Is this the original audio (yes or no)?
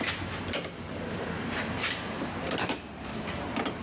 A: no